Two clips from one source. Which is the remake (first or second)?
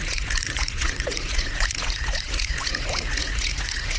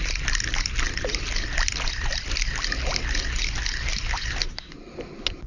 first